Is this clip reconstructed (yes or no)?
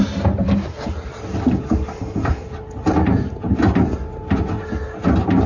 no